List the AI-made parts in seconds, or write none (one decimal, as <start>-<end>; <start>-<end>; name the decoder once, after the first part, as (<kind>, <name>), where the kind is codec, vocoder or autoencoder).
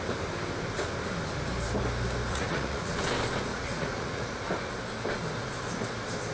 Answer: 2.3-3.0 (vocoder, Vocos); 3.5-4.5